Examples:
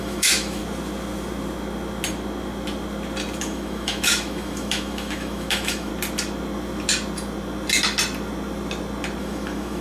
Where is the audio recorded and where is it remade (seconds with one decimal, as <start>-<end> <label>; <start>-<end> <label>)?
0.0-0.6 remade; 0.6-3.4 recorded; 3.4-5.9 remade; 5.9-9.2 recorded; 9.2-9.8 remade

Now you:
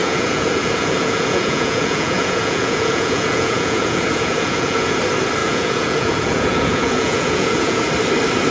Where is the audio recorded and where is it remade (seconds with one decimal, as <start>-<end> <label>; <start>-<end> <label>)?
0.0-5.0 remade; 5.0-5.4 recorded; 5.4-7.9 remade; 7.9-8.5 recorded

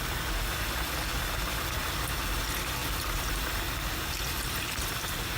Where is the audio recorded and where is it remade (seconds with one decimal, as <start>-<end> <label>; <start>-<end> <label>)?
0.0-1.1 recorded; 1.1-1.8 remade; 1.8-2.8 recorded; 2.8-5.4 remade

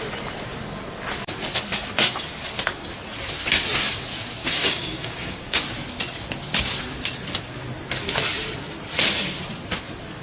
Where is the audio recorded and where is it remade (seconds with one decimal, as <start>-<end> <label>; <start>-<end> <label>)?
0.0-4.4 recorded; 4.4-5.6 remade; 5.6-10.2 recorded

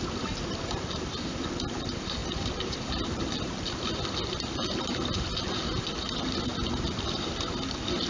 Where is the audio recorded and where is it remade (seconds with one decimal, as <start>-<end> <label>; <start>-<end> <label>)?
0.0-8.1 recorded

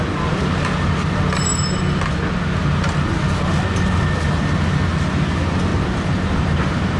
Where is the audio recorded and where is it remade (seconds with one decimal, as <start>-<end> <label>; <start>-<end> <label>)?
0.0-5.7 recorded; 5.7-7.0 remade

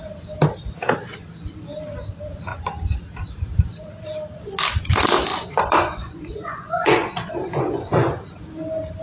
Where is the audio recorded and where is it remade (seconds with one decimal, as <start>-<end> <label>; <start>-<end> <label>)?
0.0-5.3 recorded; 5.3-8.1 remade; 8.1-9.0 recorded